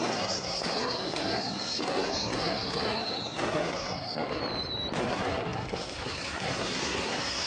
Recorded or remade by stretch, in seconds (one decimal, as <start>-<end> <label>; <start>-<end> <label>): 0.0-4.4 remade; 4.4-5.0 recorded; 5.0-7.5 remade